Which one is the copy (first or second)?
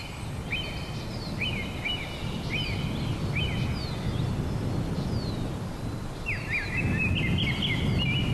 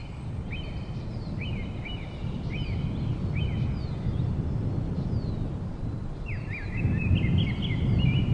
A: second